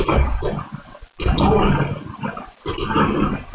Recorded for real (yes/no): yes